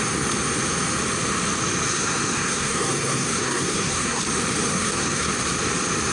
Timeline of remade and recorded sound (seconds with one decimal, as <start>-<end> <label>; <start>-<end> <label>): 0.0-1.9 recorded; 1.9-4.2 remade; 4.2-4.7 recorded; 4.7-5.3 remade; 5.3-6.1 recorded